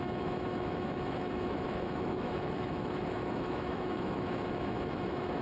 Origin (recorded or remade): remade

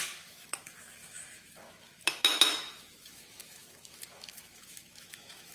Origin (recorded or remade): remade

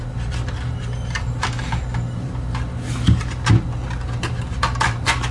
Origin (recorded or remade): recorded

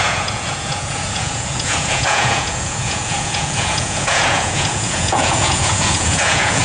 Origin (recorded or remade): remade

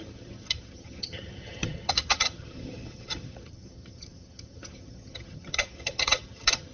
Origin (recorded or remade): remade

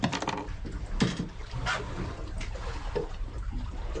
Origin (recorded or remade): recorded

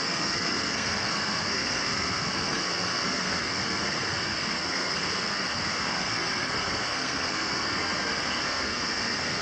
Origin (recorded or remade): remade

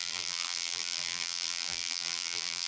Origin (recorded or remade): remade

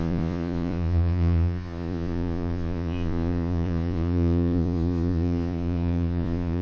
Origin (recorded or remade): remade